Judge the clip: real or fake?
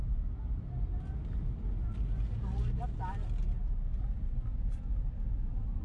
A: real